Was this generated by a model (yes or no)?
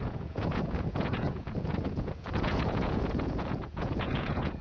yes